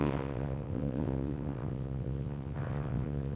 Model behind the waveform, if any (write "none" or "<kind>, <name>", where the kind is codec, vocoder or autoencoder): vocoder, WaveNeXt